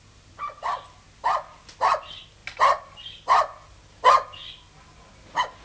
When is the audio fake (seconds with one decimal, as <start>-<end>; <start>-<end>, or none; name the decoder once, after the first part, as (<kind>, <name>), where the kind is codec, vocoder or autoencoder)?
none